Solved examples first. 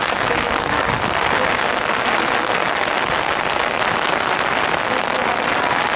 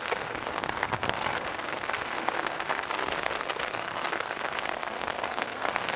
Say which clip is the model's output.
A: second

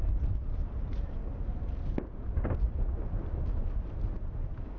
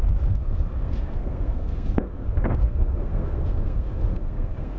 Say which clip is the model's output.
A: second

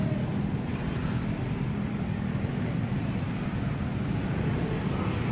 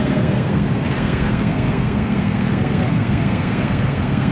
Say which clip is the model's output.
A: second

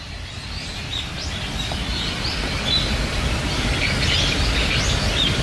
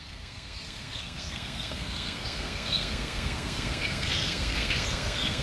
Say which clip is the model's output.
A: second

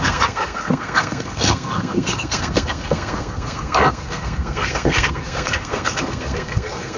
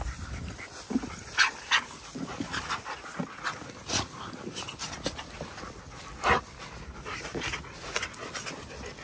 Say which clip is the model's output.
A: first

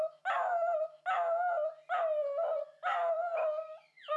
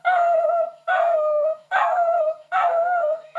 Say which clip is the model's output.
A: second